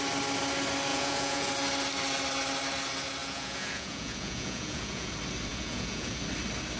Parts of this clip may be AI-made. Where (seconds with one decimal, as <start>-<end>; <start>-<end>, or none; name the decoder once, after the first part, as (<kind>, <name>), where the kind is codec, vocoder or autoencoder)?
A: 0.9-1.5 (vocoder, Vocos); 3.2-5.1; 5.5-6.2